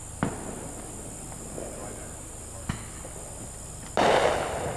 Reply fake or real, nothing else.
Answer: real